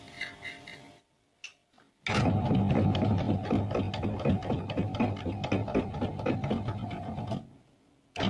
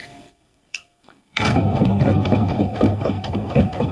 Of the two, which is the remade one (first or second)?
second